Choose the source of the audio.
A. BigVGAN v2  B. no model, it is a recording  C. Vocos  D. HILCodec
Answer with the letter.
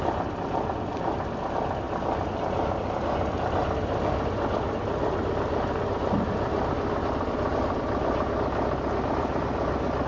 B